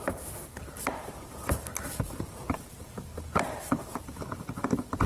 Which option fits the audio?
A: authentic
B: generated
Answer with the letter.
B